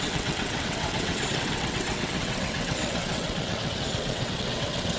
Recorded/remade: remade